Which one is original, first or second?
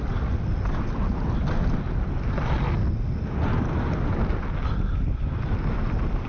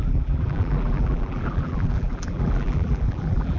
first